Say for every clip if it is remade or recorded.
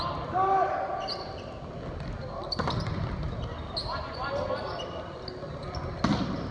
recorded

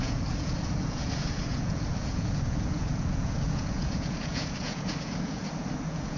remade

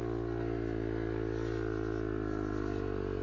recorded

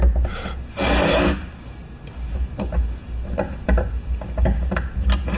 recorded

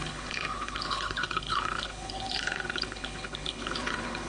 remade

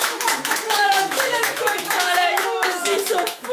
remade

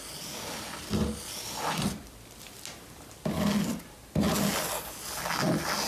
recorded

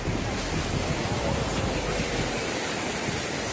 recorded